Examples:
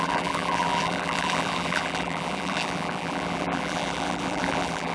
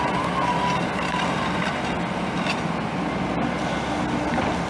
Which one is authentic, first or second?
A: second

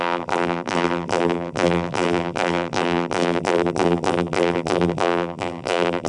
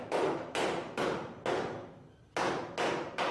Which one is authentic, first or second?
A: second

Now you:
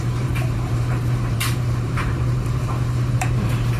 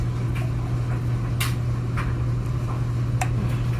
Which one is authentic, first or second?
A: second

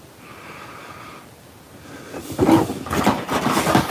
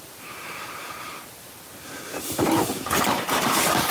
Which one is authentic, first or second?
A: first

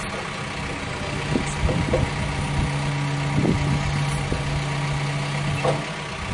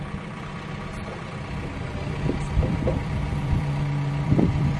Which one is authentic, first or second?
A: first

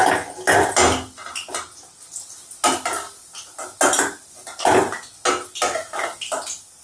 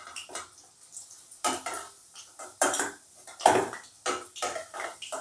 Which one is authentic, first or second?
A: first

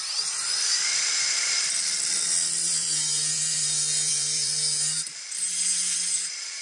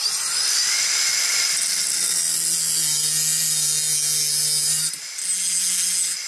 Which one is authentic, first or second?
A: second